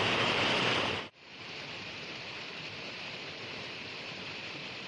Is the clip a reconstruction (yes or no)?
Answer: yes